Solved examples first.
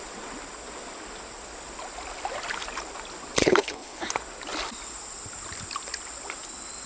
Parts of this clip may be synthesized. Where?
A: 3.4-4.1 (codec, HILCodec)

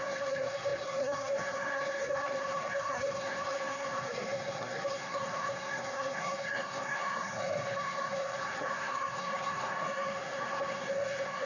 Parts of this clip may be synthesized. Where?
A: 0.0-11.5 (codec, SNAC)

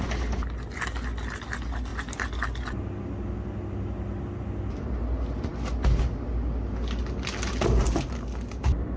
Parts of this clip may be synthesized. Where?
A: none

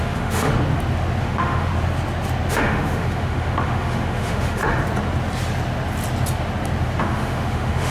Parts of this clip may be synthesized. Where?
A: 0.0-0.5 (autoencoder, DAC-VAE); 1.2-1.7; 2.5-4.6; 7.0-7.9

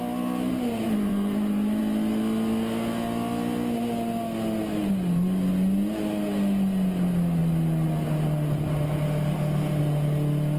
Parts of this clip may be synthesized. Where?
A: 0.5-1.8 (vocoder, BigVGAN v2)

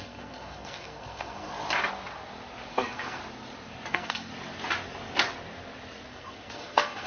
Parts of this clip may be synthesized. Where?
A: 0.0-1.5 (codec, SNAC); 2.7-3.2; 3.9-4.3; 6.1-7.1